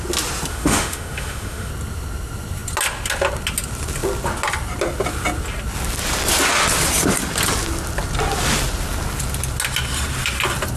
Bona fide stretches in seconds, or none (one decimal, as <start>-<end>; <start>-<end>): 0.0-0.5; 1.7-10.8

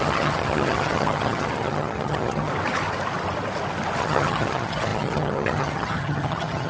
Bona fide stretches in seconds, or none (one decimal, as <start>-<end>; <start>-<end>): 2.5-4.0

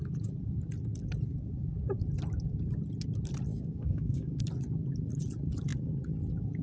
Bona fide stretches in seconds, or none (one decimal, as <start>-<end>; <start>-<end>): 0.0-3.5; 4.4-6.6

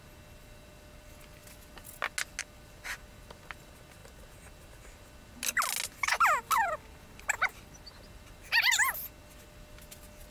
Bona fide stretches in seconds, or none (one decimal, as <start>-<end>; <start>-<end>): 0.0-10.3

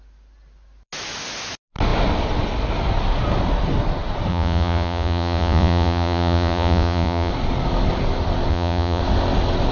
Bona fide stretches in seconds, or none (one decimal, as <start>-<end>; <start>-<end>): 0.0-4.3; 7.3-8.5; 9.0-9.7

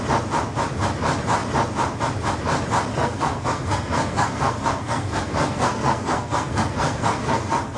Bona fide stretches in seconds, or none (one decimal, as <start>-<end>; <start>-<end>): 0.0-2.9